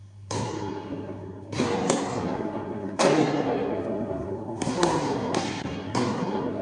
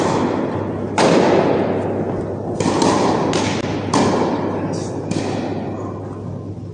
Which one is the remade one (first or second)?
first